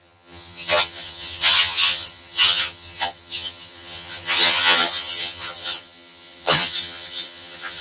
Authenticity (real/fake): fake